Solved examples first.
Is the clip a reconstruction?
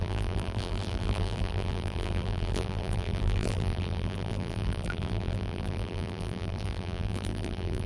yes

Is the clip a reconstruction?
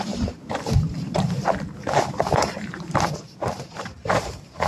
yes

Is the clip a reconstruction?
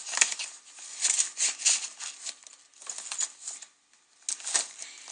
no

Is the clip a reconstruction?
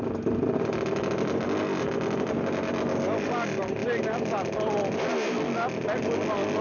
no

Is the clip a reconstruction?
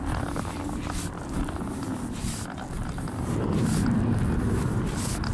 yes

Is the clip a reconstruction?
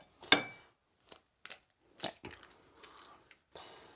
no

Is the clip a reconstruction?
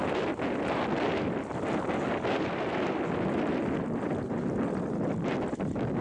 no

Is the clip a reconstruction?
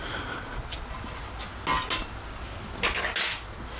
no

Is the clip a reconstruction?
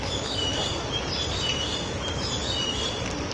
no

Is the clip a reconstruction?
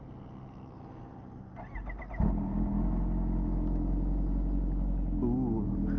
no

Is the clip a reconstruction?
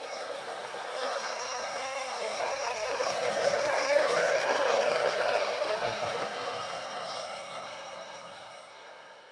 yes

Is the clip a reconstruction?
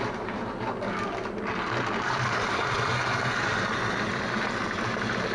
no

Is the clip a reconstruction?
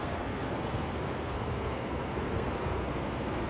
yes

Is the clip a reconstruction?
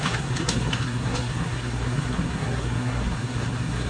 yes